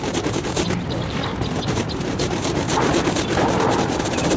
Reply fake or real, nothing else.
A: fake